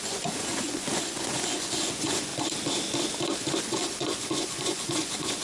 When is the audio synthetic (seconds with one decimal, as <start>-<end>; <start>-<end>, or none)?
0.0-2.3; 3.6-5.4